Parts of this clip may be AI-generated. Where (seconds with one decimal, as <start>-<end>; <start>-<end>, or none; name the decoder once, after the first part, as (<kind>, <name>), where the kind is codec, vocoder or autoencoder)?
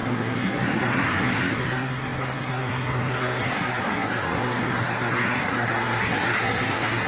0.0-7.1 (codec, SNAC)